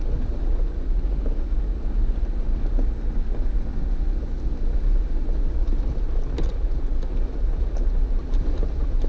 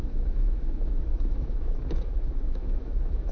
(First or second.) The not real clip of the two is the second